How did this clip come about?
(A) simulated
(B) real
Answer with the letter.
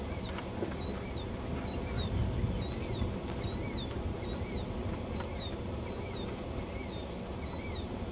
B